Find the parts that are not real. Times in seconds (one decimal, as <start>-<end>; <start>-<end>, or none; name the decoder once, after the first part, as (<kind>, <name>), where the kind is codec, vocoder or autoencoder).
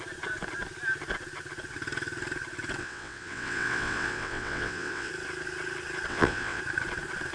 2.8-5.1 (vocoder, WaveNeXt); 6.1-6.6